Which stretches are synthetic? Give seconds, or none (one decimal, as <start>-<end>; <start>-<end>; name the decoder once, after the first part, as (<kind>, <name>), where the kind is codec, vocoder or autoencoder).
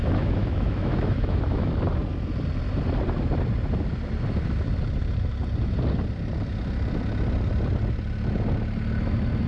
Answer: 0.0-1.7 (autoencoder, DAC-VAE)